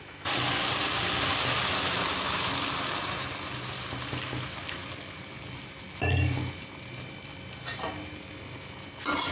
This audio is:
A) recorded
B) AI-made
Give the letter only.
A